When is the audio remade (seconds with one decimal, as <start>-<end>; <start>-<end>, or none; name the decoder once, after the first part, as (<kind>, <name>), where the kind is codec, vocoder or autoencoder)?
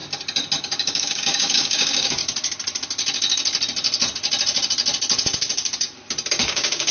0.6-2.2 (codec, DAC); 6.3-6.9